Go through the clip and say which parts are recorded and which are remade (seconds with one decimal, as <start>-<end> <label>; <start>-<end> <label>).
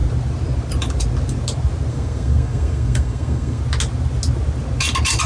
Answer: 0.0-1.9 recorded; 1.9-3.6 remade; 3.6-5.3 recorded